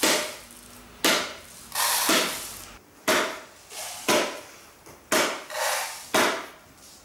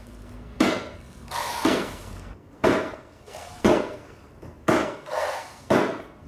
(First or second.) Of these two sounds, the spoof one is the second